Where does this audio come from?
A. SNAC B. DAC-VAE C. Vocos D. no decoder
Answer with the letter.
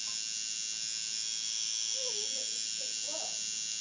D